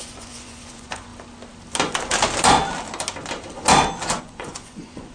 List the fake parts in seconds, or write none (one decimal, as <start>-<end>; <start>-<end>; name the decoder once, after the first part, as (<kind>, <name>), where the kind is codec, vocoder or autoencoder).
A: 0.0-1.1 (vocoder, Vocos); 4.2-5.1